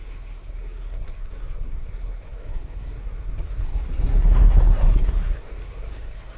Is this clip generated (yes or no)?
yes